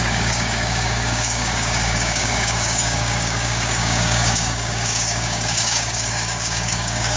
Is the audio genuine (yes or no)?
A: no